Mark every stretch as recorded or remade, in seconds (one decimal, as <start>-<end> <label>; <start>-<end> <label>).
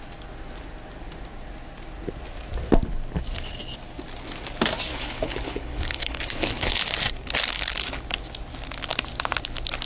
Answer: 0.0-4.9 recorded; 4.9-6.8 remade; 6.8-9.9 recorded